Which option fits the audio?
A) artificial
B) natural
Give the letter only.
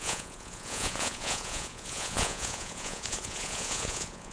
A